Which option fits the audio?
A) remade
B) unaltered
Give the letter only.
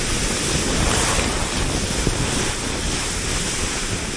B